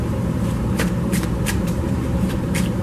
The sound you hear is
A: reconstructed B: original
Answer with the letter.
A